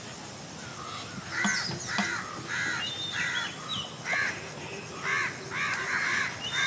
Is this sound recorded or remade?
recorded